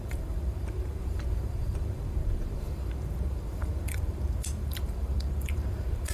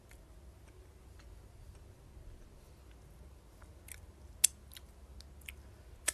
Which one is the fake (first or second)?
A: first